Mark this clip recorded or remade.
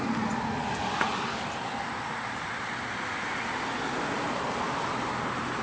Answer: recorded